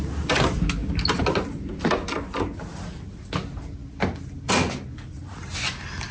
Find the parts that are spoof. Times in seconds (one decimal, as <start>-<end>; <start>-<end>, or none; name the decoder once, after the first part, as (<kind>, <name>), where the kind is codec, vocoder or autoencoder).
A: none